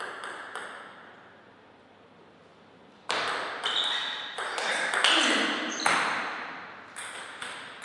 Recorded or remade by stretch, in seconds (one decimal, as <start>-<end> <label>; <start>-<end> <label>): 0.0-7.8 recorded